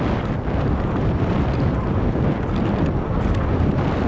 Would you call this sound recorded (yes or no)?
yes